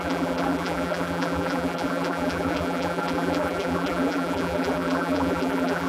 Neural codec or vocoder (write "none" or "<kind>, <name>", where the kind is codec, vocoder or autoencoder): vocoder, BigVGAN v2